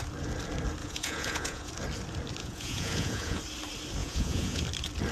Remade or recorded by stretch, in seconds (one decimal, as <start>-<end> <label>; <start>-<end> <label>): 0.0-0.8 recorded; 0.8-1.7 remade; 1.7-2.4 recorded; 2.4-3.4 remade; 3.4-4.0 recorded; 4.0-4.6 remade; 4.6-5.1 recorded